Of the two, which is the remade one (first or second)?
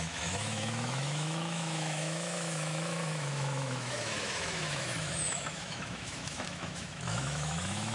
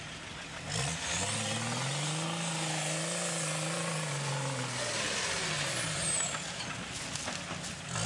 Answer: first